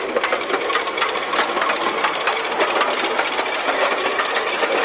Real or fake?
real